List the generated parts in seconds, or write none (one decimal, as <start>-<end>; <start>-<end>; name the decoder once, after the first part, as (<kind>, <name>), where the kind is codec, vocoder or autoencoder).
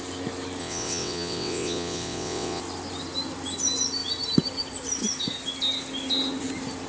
0.6-2.6 (vocoder, WaveNeXt)